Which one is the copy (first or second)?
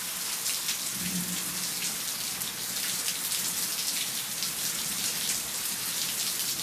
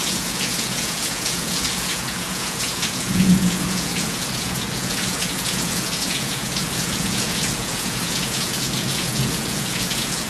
second